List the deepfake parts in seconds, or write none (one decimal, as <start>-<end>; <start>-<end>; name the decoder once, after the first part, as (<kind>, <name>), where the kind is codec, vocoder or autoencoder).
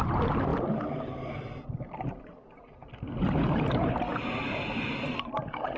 none